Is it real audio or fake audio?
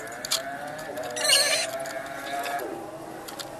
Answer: real